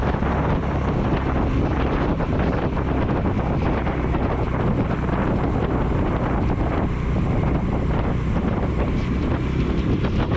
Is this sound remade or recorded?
recorded